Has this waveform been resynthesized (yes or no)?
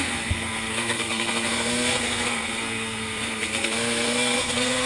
yes